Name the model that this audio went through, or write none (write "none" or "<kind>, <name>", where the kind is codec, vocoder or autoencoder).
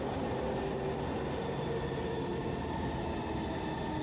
none